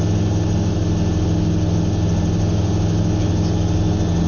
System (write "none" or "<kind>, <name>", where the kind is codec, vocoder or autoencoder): none